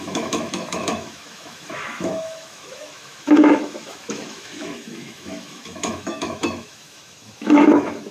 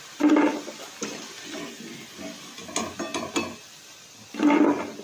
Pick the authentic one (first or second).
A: second